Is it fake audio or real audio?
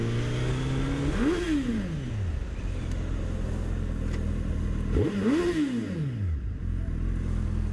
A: real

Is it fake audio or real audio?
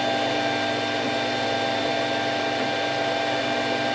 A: real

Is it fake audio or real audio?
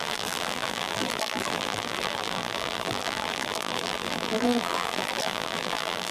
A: fake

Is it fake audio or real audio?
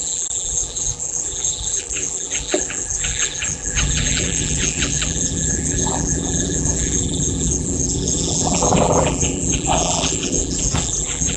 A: fake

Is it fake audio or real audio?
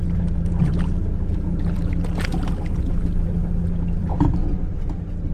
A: real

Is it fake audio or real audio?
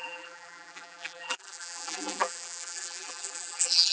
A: fake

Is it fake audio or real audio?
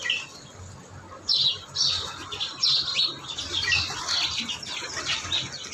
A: real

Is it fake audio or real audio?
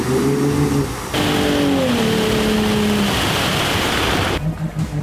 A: real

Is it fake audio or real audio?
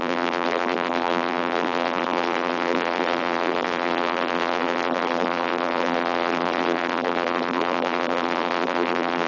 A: fake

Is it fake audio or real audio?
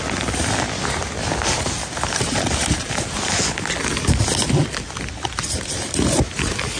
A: real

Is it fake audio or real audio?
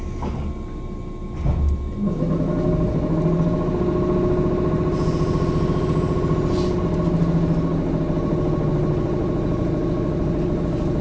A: real